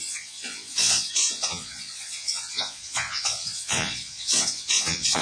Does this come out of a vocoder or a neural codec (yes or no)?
yes